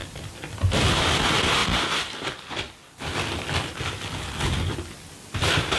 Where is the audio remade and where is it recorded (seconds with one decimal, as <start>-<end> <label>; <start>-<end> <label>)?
0.0-5.8 recorded